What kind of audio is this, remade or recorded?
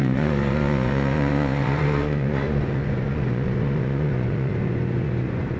remade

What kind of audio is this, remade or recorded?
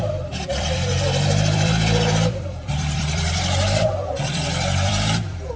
remade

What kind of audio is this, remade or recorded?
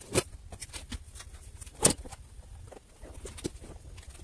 recorded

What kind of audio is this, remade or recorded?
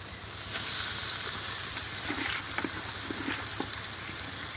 recorded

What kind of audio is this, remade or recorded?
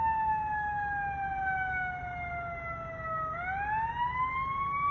recorded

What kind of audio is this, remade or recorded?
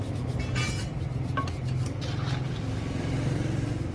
recorded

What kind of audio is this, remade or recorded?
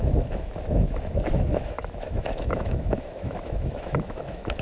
remade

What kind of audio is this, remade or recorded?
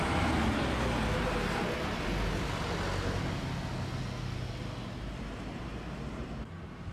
recorded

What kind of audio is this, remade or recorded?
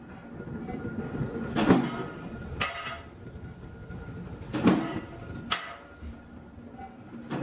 recorded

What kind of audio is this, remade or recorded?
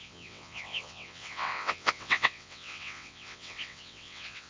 remade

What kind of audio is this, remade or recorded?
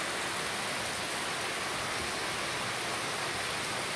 recorded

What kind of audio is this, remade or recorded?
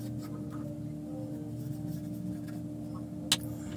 recorded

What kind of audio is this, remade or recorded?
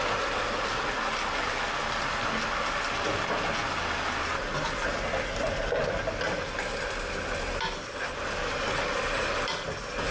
recorded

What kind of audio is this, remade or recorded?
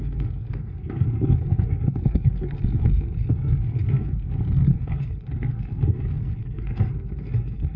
remade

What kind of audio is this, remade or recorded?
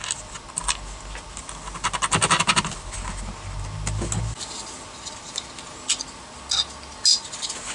recorded